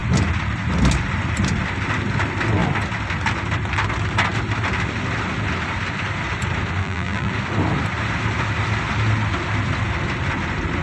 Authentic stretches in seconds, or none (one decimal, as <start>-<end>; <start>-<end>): 0.0-6.8; 7.3-10.8